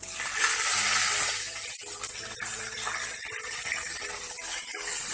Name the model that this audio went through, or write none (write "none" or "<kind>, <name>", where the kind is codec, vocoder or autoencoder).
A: none